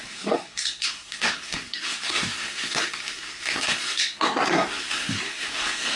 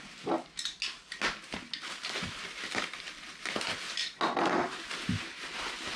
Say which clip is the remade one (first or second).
first